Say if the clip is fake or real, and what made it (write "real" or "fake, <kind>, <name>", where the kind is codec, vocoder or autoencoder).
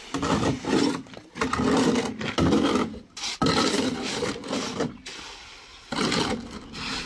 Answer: real